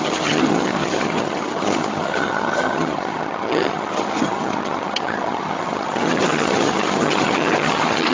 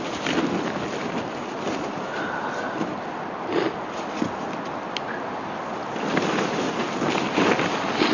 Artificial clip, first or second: first